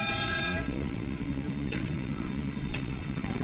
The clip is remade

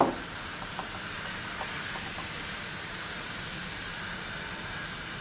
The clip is remade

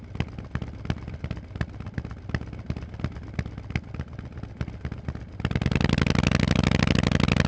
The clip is recorded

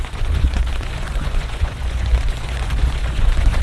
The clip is remade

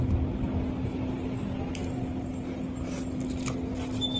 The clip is recorded